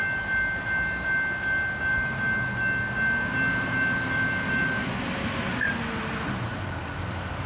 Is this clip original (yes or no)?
yes